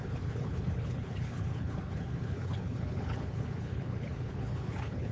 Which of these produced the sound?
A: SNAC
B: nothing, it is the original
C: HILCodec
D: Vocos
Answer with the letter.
C